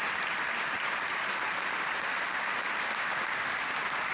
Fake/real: real